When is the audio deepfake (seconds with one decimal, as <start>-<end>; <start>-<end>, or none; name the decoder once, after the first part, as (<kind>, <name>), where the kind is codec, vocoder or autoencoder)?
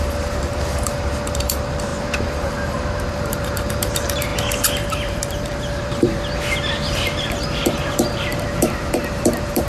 0.0-4.3 (vocoder, BigVGAN v2); 4.9-9.7